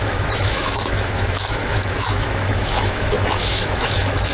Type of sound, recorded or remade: remade